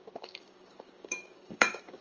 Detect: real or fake fake